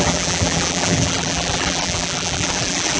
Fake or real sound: fake